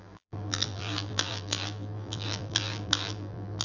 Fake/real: fake